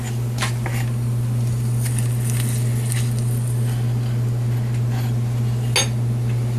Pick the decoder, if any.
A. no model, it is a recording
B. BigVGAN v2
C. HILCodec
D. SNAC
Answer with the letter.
A